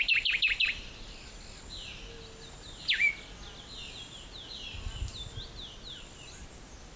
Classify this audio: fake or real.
real